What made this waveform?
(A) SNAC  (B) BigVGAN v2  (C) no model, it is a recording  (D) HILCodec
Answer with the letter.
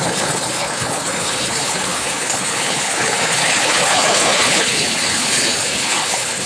D